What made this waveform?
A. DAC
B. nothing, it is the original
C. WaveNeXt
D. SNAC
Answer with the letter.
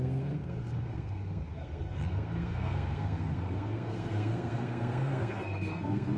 D